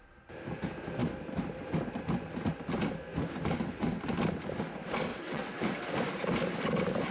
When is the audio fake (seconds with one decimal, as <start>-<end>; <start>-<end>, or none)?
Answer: 5.1-5.6